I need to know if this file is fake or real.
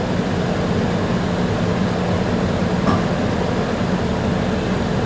real